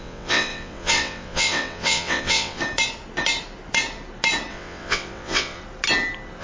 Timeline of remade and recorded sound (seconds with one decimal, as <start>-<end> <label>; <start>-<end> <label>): 0.0-2.6 remade; 2.6-4.5 recorded; 4.5-5.6 remade; 5.6-6.4 recorded